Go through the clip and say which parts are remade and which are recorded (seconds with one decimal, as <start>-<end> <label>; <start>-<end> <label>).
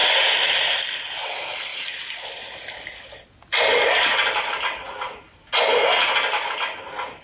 0.0-7.2 recorded